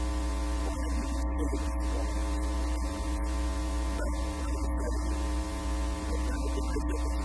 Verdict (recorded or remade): remade